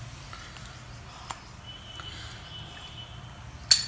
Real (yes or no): yes